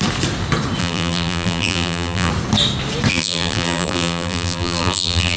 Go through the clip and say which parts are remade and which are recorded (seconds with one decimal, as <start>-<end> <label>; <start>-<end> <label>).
0.0-0.8 recorded; 0.8-2.3 remade; 2.3-3.1 recorded; 3.1-5.4 remade